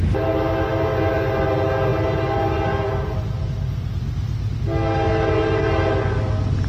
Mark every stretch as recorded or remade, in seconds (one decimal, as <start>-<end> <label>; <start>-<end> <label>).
0.0-6.7 recorded